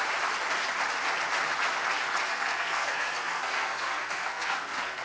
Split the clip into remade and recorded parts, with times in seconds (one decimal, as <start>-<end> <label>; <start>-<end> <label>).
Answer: 0.0-2.3 recorded; 2.3-5.0 remade